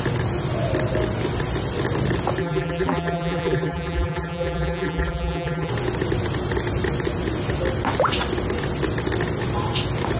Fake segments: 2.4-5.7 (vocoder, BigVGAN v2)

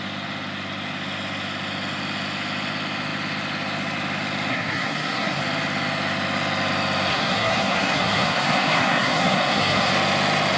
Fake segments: 4.5-5.4 (codec, SNAC); 7.1-9.9

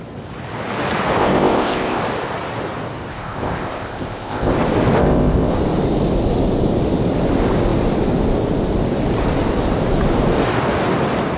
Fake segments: 1.2-2.0 (codec, ZipCodec); 3.1-4.5; 5.0-5.5